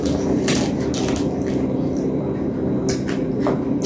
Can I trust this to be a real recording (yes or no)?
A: yes